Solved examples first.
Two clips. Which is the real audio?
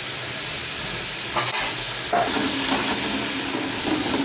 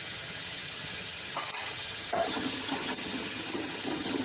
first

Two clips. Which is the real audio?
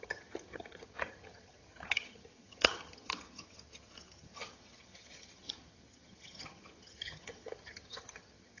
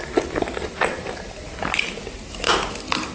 second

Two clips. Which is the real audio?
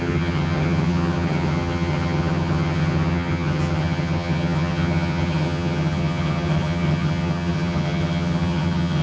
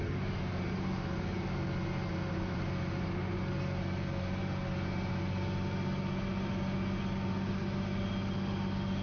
second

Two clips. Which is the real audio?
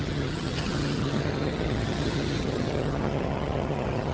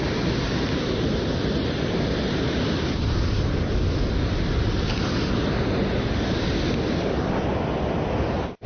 second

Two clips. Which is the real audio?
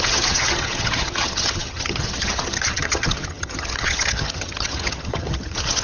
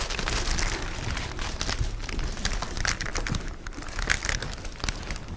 second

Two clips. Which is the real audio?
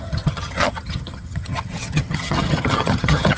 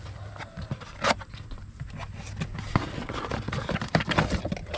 second